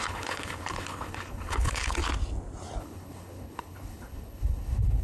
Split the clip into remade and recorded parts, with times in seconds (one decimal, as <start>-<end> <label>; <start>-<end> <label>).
0.0-2.0 remade; 2.0-2.8 recorded; 2.8-5.0 remade